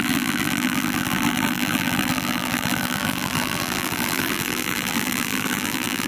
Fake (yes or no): yes